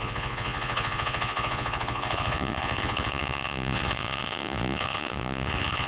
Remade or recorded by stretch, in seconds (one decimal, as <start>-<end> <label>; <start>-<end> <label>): 0.0-5.9 remade